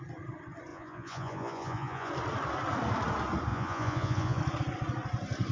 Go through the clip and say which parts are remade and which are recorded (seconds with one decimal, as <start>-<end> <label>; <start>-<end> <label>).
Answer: 0.0-0.7 recorded; 0.7-2.1 remade; 2.1-3.5 recorded; 3.5-4.4 remade; 4.4-5.5 recorded